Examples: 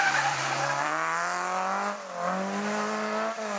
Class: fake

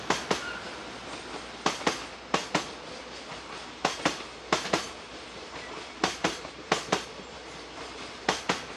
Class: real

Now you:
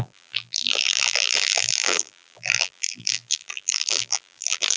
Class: fake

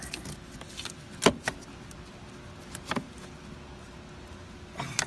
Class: real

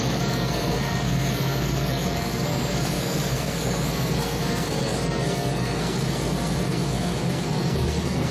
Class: fake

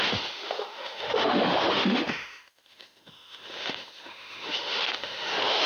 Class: fake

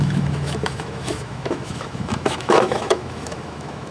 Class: fake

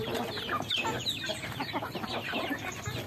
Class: real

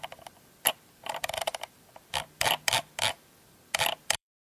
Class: fake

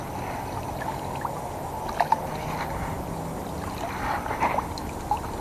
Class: real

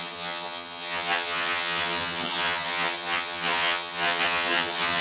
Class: fake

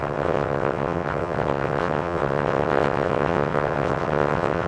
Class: fake